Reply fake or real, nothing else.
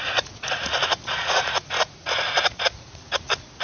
fake